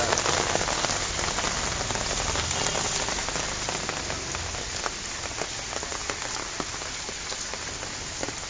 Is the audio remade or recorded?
recorded